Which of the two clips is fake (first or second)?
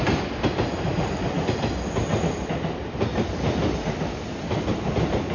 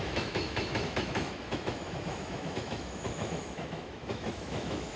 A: second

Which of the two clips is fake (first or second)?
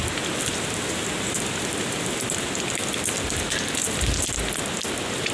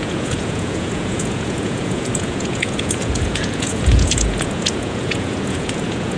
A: second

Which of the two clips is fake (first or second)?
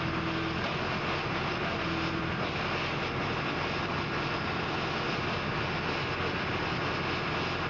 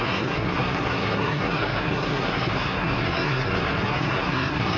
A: second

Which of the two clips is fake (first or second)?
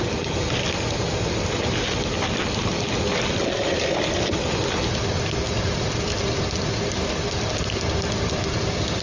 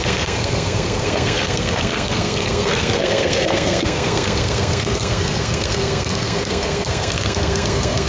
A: second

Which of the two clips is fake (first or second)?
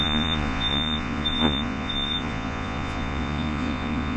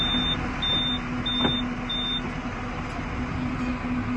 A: first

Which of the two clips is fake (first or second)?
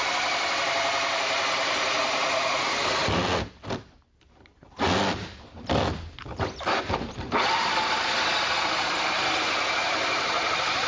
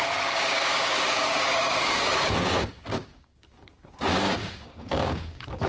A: second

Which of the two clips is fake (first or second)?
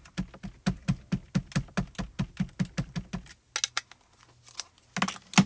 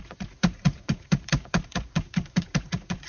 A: second